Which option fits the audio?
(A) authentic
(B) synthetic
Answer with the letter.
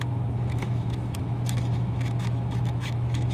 B